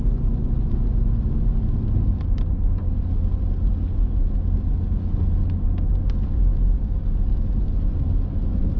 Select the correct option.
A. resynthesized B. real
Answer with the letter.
B